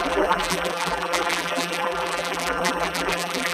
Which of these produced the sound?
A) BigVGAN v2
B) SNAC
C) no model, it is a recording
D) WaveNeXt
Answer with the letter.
A